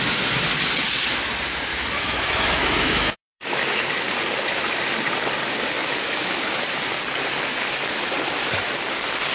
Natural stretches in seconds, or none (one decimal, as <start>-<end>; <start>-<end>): 0.0-1.7; 3.9-5.8; 6.6-9.3